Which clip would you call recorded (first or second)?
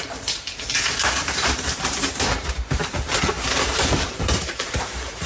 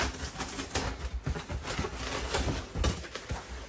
second